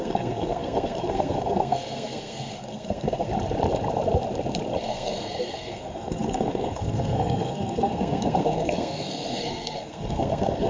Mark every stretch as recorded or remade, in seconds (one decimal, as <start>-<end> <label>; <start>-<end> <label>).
0.0-3.3 remade; 3.3-4.8 recorded; 4.8-10.7 remade